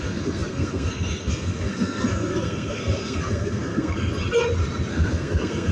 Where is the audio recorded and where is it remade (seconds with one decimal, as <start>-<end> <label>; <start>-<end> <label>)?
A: 0.0-4.1 remade; 4.1-4.9 recorded; 4.9-5.7 remade